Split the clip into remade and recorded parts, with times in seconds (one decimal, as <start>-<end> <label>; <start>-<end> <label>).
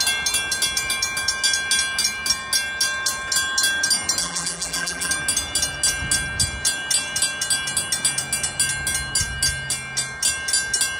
0.0-4.2 recorded; 4.2-5.1 remade; 5.1-11.0 recorded